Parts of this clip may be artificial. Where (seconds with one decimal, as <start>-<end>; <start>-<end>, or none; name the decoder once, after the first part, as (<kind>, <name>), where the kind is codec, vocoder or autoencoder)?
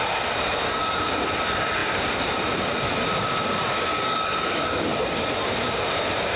0.6-1.1 (codec, DAC); 3.9-5.1